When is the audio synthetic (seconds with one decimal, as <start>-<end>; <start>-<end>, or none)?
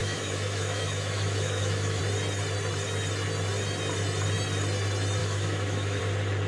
0.0-2.0; 5.2-6.0